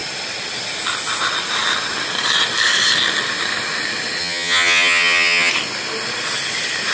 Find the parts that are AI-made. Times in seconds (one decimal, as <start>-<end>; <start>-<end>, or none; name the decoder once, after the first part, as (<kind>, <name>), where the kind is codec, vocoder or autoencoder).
4.2-5.5 (vocoder, HiFi-GAN)